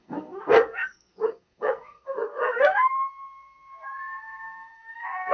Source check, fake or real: fake